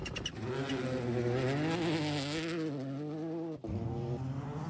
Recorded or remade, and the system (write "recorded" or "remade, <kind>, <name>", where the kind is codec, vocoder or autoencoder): recorded